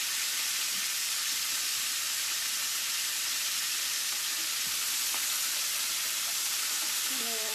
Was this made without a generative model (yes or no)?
no